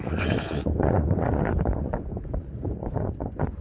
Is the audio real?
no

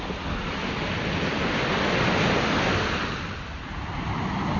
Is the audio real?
yes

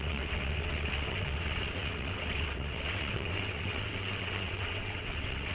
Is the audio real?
no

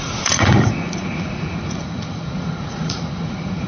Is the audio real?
no